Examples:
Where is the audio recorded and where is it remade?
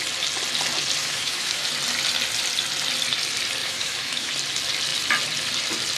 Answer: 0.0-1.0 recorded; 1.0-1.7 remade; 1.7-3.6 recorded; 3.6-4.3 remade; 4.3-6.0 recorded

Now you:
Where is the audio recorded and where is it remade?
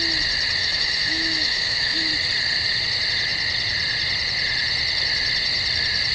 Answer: 0.0-0.6 recorded; 0.6-2.1 remade; 2.1-6.1 recorded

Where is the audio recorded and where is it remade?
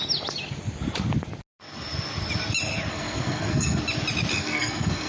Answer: 0.0-2.9 recorded; 2.9-3.8 remade; 3.8-4.3 recorded; 4.3-5.1 remade